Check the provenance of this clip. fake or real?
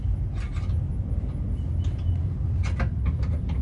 real